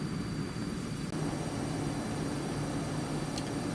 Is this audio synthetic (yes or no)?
no